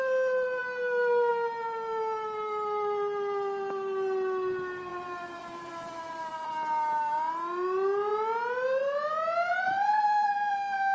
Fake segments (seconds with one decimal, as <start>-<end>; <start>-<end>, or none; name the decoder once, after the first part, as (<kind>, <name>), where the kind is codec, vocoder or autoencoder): 4.9-6.5 (vocoder, BigVGAN v2); 9.5-10.5